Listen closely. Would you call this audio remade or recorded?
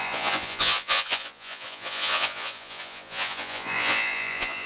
remade